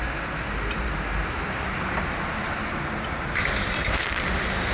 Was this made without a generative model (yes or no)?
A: yes